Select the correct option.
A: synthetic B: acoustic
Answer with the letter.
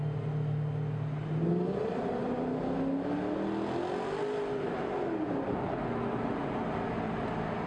B